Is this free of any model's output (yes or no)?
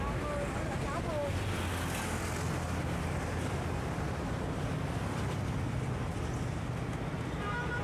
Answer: yes